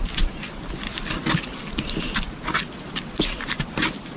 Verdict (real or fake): real